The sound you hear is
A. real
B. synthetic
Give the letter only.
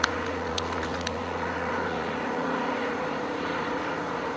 B